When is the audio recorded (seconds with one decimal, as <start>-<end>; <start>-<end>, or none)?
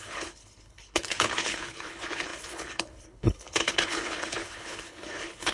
none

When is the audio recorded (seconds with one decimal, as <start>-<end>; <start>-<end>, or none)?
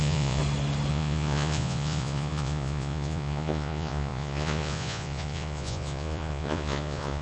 0.4-0.9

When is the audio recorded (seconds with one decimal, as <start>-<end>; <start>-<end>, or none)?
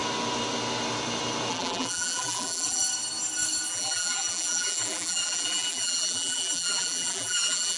0.0-1.5; 2.8-3.7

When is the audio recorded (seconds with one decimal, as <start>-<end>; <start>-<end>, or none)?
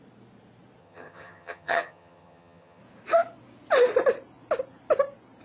0.0-0.8; 2.8-5.4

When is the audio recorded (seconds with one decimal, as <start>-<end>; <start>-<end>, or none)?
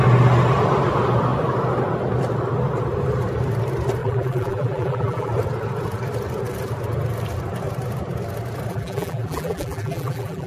0.0-4.0; 5.3-8.7